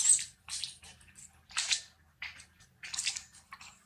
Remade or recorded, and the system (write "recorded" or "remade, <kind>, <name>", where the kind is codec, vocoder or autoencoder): recorded